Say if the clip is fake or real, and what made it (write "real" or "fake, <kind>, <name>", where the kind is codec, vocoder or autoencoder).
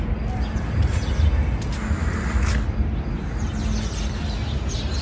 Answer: real